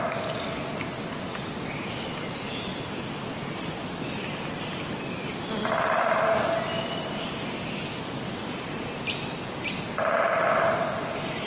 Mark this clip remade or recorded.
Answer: recorded